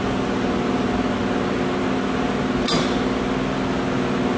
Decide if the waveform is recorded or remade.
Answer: recorded